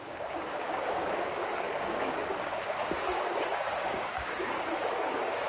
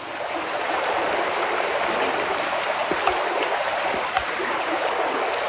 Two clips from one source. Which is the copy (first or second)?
first